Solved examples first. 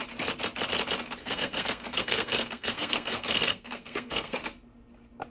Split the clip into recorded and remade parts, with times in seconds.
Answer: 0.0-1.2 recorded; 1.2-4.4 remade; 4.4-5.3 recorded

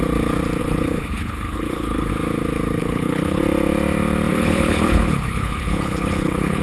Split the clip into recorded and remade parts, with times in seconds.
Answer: 0.0-0.6 recorded; 0.6-2.1 remade; 2.1-2.8 recorded; 2.8-3.4 remade; 3.4-4.3 recorded; 4.3-6.6 remade

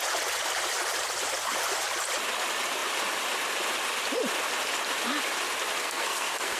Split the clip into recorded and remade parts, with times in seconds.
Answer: 0.0-5.8 recorded; 5.8-6.6 remade